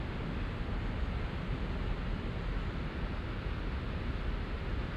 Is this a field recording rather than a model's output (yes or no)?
yes